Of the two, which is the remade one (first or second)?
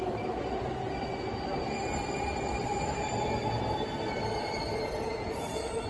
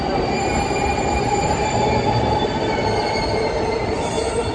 second